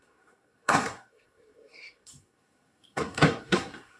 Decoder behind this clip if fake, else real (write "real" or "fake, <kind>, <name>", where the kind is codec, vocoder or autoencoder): fake, codec, SNAC